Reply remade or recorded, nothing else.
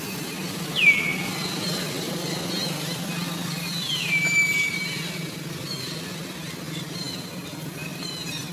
recorded